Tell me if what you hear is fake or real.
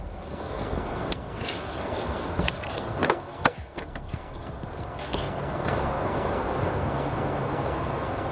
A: fake